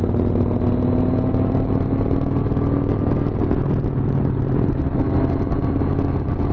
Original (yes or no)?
yes